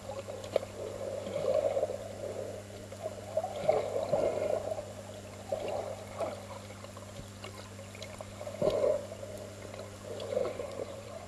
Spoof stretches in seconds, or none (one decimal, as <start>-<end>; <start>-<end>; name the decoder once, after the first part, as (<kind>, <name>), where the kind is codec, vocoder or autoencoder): 10.4-11.3 (vocoder, Vocos)